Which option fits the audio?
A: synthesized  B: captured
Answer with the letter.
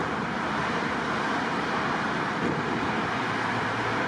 A